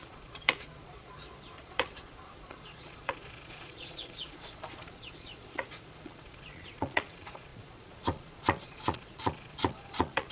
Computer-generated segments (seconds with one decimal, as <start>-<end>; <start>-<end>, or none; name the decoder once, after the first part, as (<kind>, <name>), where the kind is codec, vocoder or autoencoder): 0.0-10.3 (vocoder, Vocos)